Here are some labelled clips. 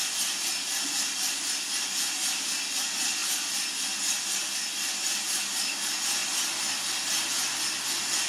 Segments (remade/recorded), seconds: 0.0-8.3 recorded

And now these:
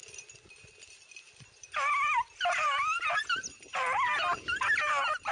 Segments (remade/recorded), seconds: 0.0-3.2 remade; 3.2-5.3 recorded

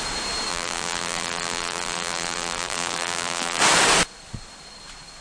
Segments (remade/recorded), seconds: 0.0-0.5 recorded; 0.5-3.6 remade; 3.6-5.2 recorded

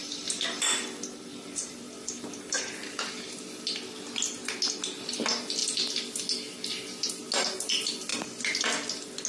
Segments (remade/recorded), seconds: 0.0-3.0 remade; 3.0-9.3 recorded

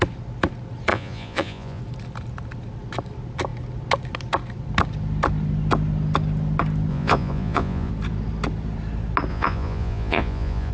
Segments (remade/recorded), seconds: 0.0-0.9 recorded; 0.9-1.8 remade; 1.8-6.9 recorded; 6.9-7.9 remade; 7.9-9.3 recorded; 9.3-10.7 remade

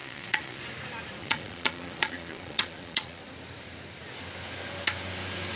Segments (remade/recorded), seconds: 0.0-0.6 remade; 0.6-1.2 recorded; 1.2-3.2 remade; 3.2-5.6 recorded

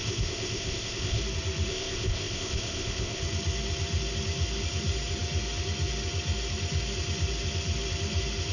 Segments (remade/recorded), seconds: 0.0-1.2 remade; 1.2-1.7 recorded; 1.7-3.2 remade; 3.2-8.5 recorded

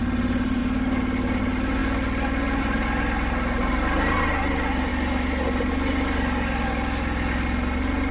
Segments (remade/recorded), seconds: 0.0-0.6 remade; 0.6-1.4 recorded; 1.4-1.8 remade; 1.8-2.6 recorded; 2.6-4.9 remade; 4.9-8.1 recorded